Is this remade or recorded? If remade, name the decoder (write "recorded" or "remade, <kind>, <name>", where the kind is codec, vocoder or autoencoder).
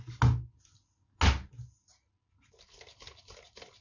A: recorded